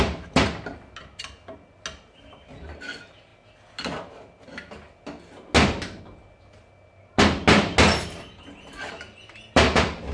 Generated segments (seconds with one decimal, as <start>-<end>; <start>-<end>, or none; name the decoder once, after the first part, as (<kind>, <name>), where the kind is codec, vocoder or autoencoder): none